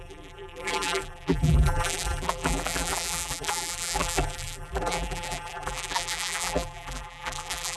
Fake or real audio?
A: fake